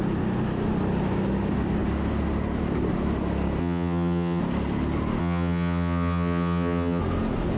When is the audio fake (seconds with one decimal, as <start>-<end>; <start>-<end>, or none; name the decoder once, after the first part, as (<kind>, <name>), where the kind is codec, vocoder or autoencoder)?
3.6-4.4 (vocoder, HiFi-GAN); 5.2-7.0